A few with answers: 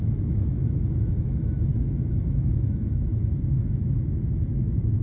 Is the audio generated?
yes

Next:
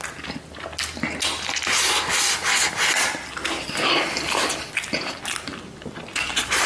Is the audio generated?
no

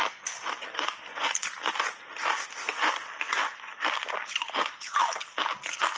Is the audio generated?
no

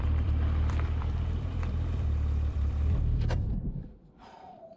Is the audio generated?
yes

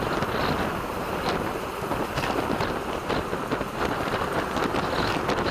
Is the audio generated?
no